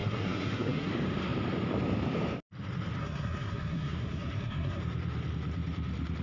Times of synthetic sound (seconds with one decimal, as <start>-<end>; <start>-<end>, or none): 0.0-0.9; 3.0-4.8

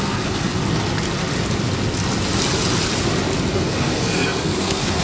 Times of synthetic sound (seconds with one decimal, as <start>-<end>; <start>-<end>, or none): 0.0-0.5; 3.5-5.0

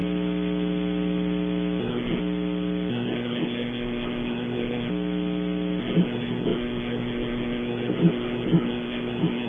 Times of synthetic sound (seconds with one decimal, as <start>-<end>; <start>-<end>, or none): 1.8-2.2; 2.9-4.9; 5.8-9.5

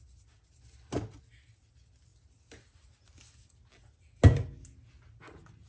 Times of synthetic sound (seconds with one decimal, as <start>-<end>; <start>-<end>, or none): none

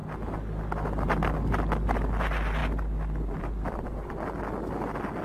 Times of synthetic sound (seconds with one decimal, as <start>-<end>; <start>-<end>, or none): none

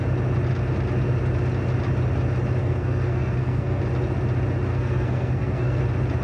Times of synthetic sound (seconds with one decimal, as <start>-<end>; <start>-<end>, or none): 2.6-3.8; 4.7-5.8

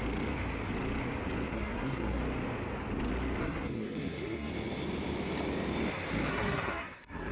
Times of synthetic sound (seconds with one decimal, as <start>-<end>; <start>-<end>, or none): 1.5-2.2; 3.4-4.5; 6.3-7.3